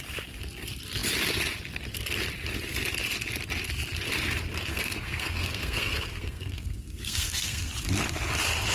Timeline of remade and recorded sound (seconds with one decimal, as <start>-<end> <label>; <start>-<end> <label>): 0.0-4.7 recorded; 4.7-7.7 remade; 7.7-8.7 recorded